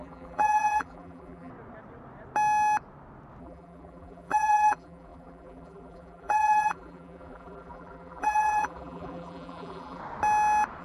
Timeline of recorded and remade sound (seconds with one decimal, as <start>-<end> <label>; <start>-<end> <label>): 0.0-1.5 remade; 1.5-3.4 recorded; 3.4-10.0 remade; 10.0-10.8 recorded